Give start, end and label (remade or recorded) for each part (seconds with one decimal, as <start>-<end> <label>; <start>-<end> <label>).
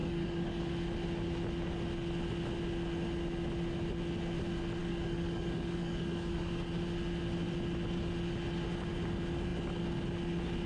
0.0-0.6 remade; 0.6-4.8 recorded; 4.8-6.7 remade; 6.7-10.7 recorded